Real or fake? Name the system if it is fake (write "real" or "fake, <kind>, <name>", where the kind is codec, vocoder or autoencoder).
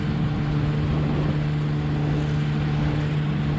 real